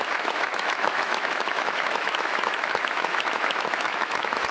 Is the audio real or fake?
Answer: fake